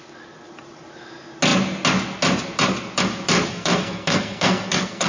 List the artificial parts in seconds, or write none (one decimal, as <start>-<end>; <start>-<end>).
3.5-5.1